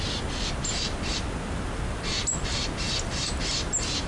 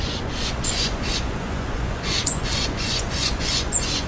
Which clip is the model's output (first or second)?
second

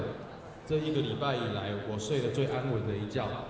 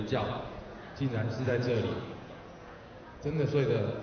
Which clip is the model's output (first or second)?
second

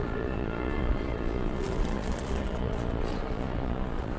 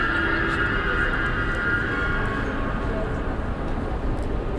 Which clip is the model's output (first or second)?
first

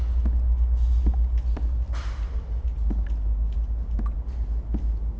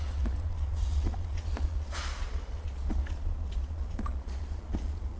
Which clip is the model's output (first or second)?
second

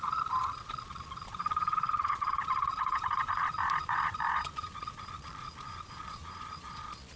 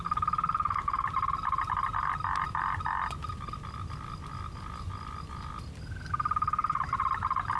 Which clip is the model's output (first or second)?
first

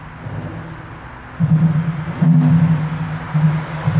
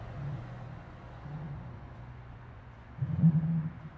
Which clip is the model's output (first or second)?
second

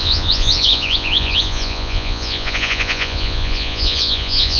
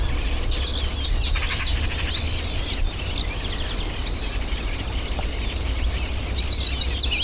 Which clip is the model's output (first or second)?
first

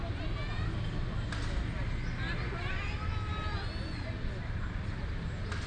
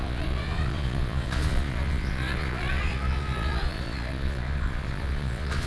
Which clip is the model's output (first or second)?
second